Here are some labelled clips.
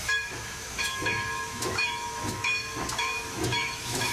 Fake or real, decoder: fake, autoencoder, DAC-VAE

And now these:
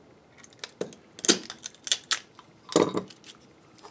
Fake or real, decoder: real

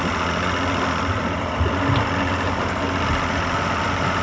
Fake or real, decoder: real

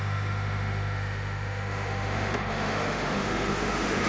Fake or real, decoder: fake, autoencoder, DAC-VAE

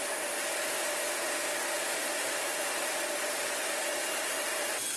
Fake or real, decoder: real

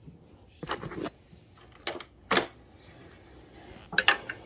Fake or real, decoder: real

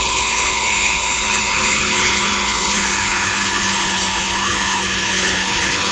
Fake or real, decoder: fake, codec, HILCodec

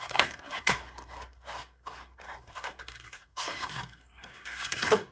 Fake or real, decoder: fake, codec, SNAC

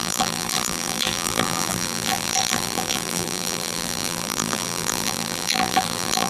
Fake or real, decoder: fake, vocoder, BigVGAN v2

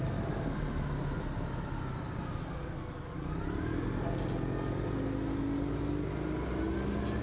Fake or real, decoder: real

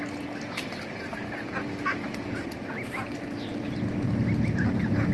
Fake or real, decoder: real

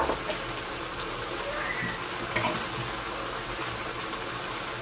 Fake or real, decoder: real